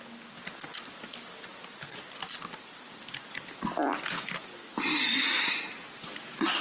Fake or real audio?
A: real